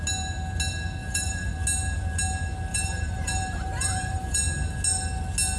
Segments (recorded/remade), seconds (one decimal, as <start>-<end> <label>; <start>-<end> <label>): 0.0-1.0 recorded; 1.0-1.5 remade; 1.5-2.7 recorded; 2.7-4.4 remade; 4.4-5.6 recorded